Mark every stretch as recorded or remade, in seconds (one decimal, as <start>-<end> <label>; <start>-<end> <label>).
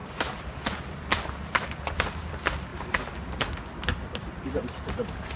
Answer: 0.0-0.6 remade; 0.6-2.7 recorded; 2.7-3.4 remade; 3.4-5.4 recorded